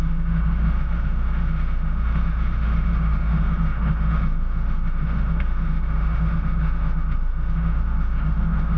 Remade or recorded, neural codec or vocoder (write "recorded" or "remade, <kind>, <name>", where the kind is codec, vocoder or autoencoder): remade, autoencoder, DAC-VAE